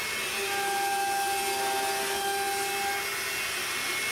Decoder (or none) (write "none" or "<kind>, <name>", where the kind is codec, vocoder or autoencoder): none